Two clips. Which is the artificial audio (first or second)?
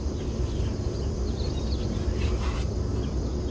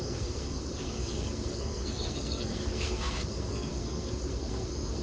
second